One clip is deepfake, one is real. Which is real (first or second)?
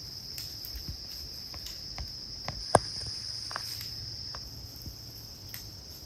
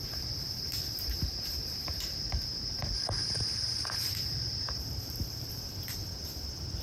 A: first